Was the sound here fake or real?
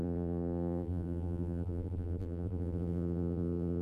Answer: fake